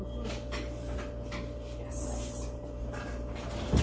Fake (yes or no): no